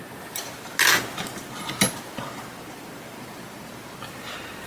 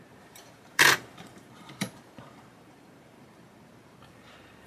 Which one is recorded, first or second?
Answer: first